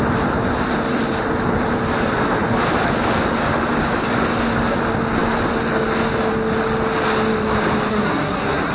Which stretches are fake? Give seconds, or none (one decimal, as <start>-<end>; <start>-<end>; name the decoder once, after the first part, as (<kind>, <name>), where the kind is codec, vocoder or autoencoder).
7.9-8.7 (codec, SNAC)